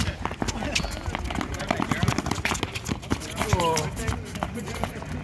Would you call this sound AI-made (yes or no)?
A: no